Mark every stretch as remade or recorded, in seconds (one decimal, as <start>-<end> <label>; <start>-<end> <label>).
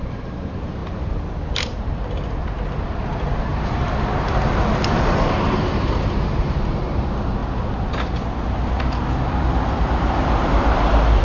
0.0-0.8 remade; 0.8-1.5 recorded; 1.5-2.4 remade; 2.4-3.4 recorded; 3.4-7.4 remade; 7.4-10.2 recorded; 10.2-11.2 remade